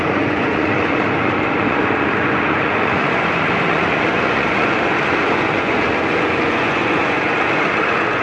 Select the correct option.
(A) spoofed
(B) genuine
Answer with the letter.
A